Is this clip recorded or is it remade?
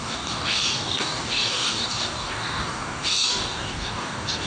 remade